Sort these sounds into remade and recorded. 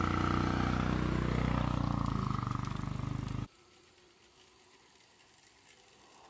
recorded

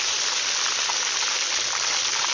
recorded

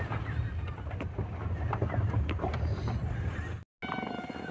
recorded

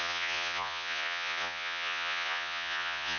remade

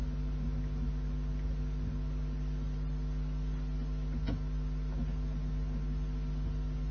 recorded